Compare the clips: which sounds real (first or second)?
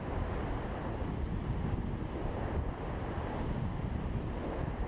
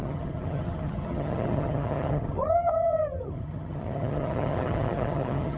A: first